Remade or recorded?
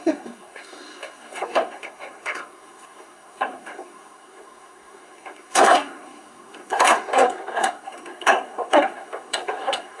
remade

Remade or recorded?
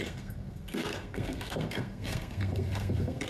remade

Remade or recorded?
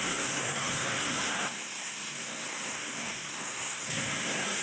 remade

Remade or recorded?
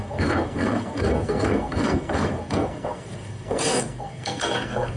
remade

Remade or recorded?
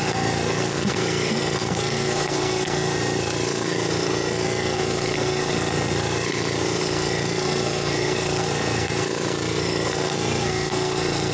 remade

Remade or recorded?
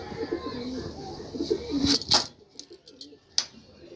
recorded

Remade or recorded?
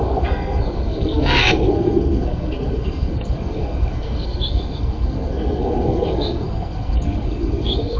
remade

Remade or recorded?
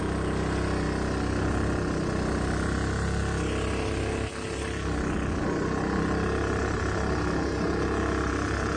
recorded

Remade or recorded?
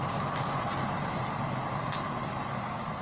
recorded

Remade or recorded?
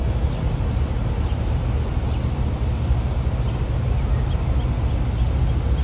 recorded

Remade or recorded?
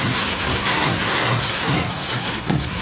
remade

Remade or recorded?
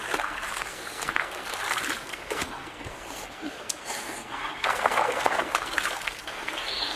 remade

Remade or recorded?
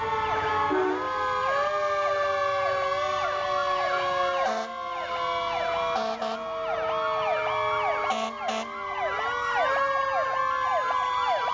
recorded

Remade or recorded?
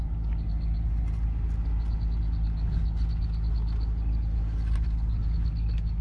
recorded